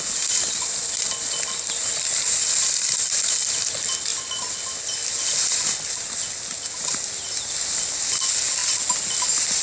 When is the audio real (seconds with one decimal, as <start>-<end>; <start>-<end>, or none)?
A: 0.0-9.6